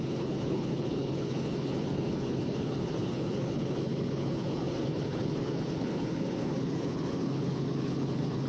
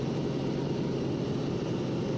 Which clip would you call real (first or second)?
second